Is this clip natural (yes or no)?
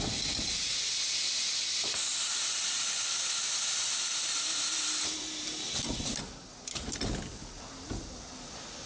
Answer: yes